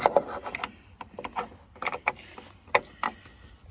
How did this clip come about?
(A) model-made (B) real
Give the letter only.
B